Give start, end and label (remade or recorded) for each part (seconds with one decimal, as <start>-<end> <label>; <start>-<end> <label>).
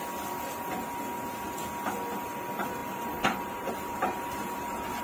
0.0-2.8 recorded; 2.8-5.0 remade